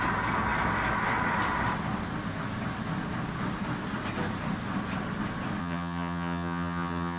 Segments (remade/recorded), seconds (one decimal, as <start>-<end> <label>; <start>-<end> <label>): 0.0-5.6 recorded; 5.6-7.2 remade